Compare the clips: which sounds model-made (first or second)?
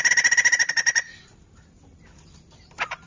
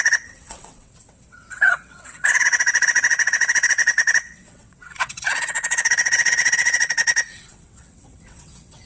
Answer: second